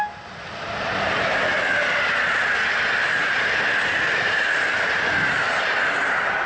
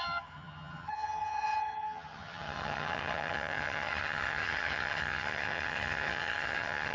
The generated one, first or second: second